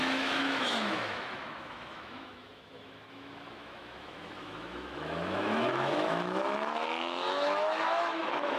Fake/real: fake